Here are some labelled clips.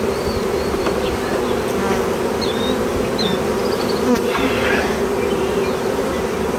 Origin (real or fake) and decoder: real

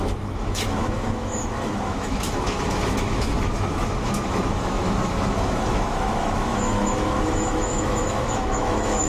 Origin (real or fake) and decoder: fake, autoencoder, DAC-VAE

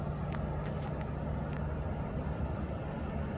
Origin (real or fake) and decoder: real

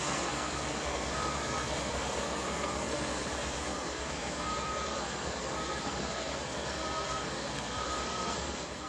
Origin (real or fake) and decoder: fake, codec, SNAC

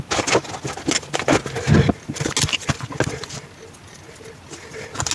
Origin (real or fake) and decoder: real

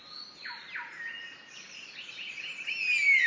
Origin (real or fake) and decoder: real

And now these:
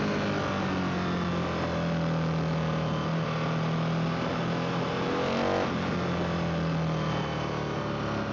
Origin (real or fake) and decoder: real